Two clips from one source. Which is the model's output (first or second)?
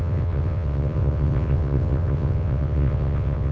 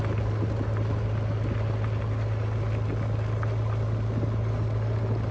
first